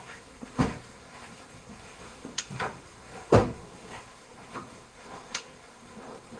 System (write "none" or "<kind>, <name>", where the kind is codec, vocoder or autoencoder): codec, SNAC